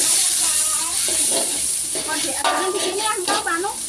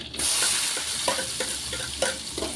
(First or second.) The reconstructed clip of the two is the first